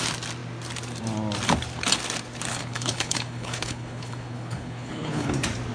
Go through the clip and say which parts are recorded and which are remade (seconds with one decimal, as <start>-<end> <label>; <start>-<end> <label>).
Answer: 0.0-2.5 recorded; 2.5-5.3 remade; 5.3-5.7 recorded